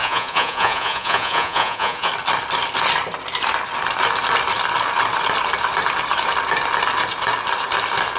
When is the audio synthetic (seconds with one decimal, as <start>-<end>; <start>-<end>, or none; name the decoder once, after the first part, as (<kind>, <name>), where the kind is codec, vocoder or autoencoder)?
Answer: 0.0-2.1 (vocoder, Vocos)